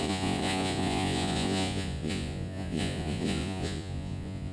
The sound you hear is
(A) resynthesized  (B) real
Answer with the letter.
A